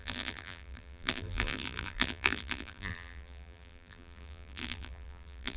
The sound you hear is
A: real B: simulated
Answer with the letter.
B